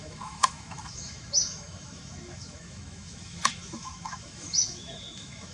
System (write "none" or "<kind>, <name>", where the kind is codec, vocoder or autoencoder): autoencoder, DAC-VAE